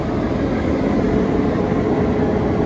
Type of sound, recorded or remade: recorded